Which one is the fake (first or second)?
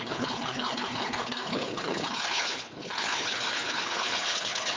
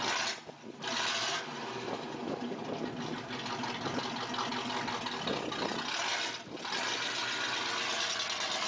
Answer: first